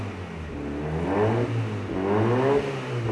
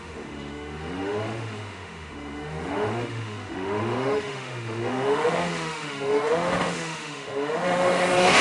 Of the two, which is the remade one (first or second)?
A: second